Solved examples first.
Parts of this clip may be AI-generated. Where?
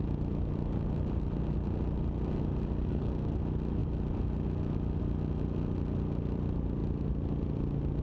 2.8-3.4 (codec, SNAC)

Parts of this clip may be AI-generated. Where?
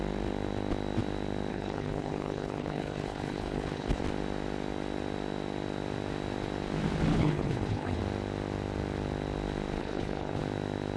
1.5-4.0 (codec, HILCodec); 7.1-8.0; 9.8-10.4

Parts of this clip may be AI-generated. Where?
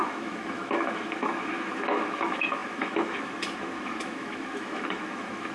0.0-5.5 (autoencoder, DAC-VAE)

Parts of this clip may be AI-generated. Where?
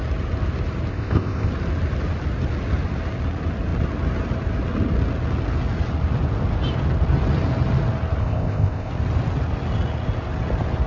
0.9-1.5 (codec, ZipCodec); 8.2-8.9